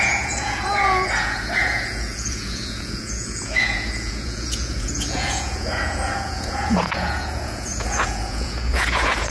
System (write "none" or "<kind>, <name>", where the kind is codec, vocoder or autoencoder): vocoder, Vocos